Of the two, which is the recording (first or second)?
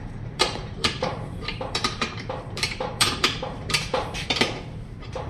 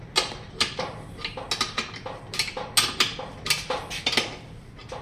second